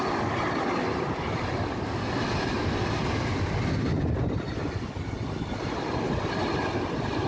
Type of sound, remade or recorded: recorded